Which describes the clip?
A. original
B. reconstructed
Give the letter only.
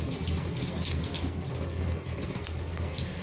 B